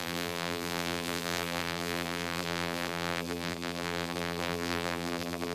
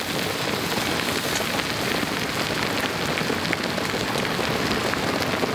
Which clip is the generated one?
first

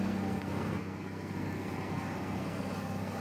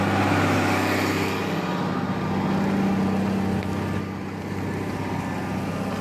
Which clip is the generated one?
first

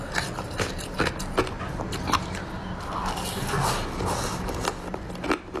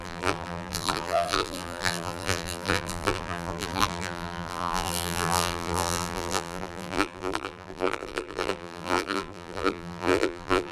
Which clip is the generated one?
second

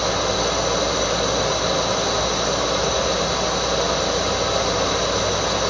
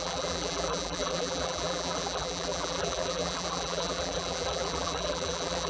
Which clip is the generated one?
second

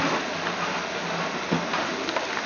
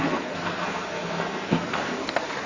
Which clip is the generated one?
second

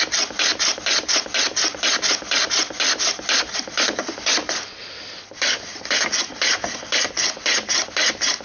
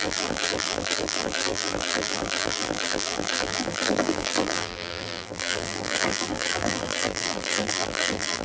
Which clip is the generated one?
second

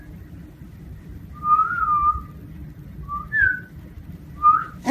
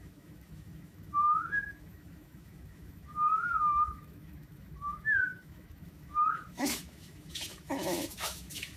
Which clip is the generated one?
second